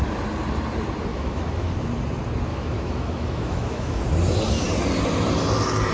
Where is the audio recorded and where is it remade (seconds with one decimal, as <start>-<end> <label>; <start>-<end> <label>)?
0.0-1.1 recorded; 1.1-1.9 remade; 1.9-2.5 recorded; 2.5-4.0 remade; 4.0-5.9 recorded

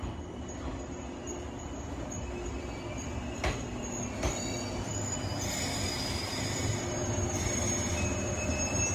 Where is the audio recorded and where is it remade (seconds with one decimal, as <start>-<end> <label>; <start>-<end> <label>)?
0.0-8.9 recorded

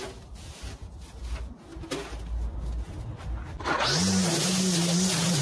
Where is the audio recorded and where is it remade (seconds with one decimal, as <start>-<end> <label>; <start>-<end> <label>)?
0.0-5.4 recorded

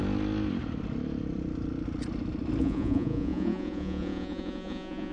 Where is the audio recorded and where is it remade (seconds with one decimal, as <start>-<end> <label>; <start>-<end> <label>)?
0.0-2.6 recorded; 2.6-5.1 remade

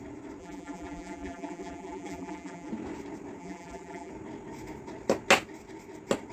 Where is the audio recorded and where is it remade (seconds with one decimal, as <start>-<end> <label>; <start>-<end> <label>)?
0.0-0.4 recorded; 0.4-2.7 remade; 2.7-3.4 recorded; 3.4-4.1 remade; 4.1-6.3 recorded

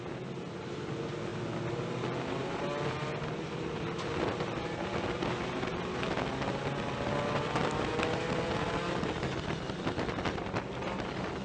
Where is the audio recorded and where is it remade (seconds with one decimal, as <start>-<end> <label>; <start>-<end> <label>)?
0.0-11.4 recorded

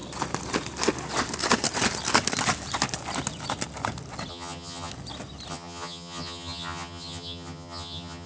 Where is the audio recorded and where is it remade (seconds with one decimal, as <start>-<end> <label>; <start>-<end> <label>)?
0.0-4.3 recorded; 4.3-4.9 remade; 4.9-5.5 recorded; 5.5-8.3 remade

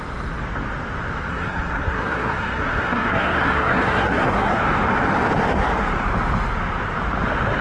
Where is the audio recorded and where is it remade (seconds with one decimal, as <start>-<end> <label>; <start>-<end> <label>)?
0.0-1.3 recorded; 1.3-4.6 remade; 4.6-7.6 recorded